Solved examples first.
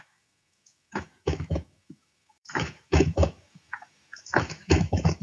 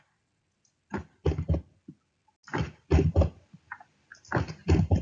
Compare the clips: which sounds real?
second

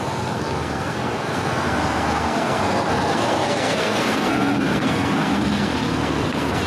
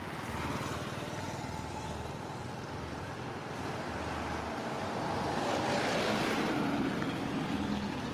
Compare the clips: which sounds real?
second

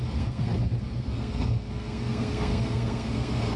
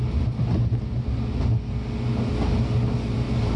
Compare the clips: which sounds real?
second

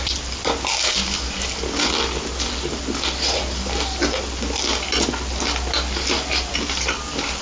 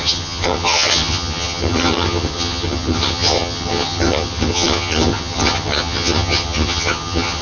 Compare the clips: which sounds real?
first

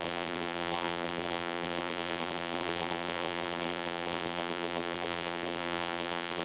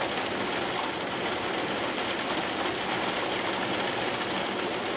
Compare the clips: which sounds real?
second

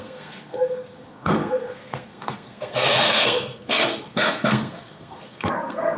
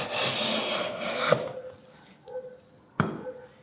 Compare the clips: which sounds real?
second